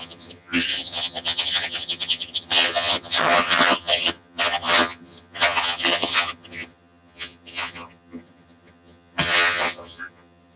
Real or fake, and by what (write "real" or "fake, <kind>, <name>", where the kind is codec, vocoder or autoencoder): fake, vocoder, HiFi-GAN